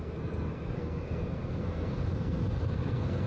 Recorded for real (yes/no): no